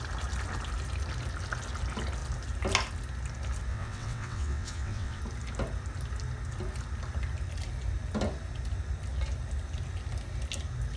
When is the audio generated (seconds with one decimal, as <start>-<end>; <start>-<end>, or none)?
3.7-5.2